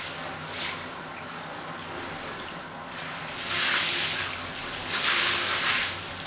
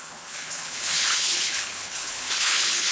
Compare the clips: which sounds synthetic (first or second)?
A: second